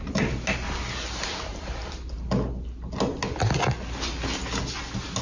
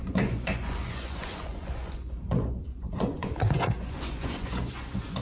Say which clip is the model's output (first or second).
second